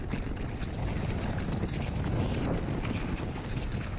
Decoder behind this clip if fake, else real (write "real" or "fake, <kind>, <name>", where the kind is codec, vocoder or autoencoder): real